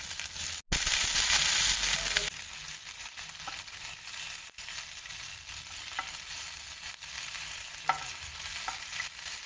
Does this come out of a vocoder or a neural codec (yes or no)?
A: no